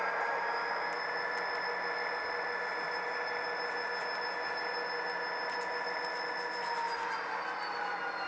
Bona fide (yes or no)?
yes